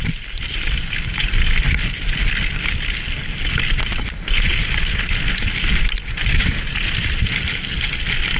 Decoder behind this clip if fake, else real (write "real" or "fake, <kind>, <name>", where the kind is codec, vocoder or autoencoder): real